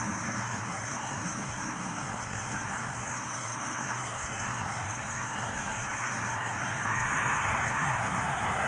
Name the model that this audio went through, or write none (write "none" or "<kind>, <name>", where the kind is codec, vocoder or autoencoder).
codec, SNAC